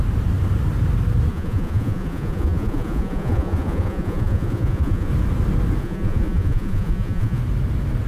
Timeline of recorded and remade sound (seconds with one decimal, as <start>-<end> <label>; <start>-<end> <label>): 0.0-1.3 recorded; 1.3-5.1 remade; 5.1-5.8 recorded; 5.8-7.4 remade; 7.4-8.1 recorded